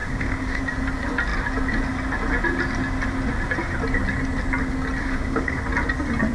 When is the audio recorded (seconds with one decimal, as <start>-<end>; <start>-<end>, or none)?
0.6-5.0; 5.6-6.3